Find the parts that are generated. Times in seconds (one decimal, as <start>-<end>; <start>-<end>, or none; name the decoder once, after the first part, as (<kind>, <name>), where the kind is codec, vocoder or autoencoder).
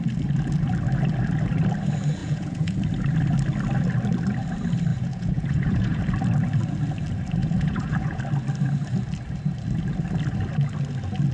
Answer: 2.2-2.8 (vocoder, Vocos); 4.9-6.0; 7.4-8.2